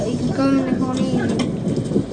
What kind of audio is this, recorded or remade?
recorded